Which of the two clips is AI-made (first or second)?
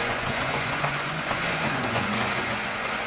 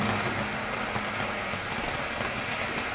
first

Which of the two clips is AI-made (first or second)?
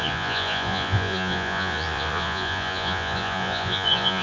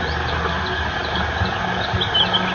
first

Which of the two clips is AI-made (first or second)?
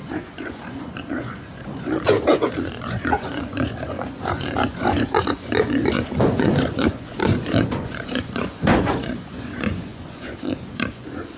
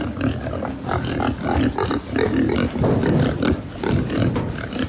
first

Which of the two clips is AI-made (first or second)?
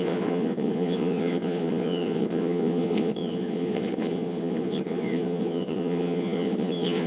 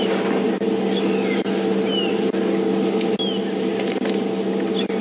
first